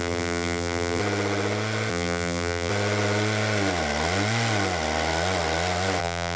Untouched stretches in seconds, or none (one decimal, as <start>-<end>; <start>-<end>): 1.0-1.9; 2.7-6.0